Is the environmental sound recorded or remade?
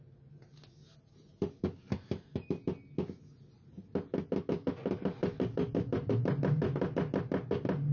recorded